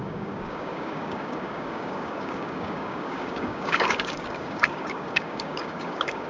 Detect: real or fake fake